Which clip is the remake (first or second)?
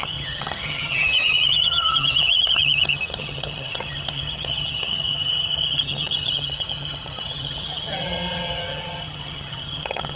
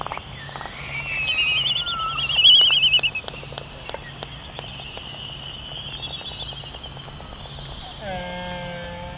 first